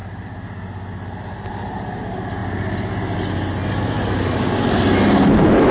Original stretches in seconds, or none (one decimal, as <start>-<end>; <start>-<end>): 0.0-5.7